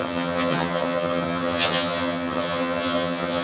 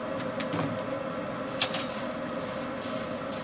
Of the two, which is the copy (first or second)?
first